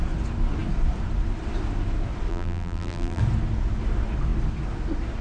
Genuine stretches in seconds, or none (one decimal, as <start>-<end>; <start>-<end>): 0.0-2.3; 3.2-5.2